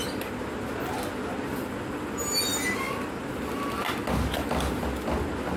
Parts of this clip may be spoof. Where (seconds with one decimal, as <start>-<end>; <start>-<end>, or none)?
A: none